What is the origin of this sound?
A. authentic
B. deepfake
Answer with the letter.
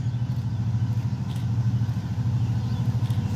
A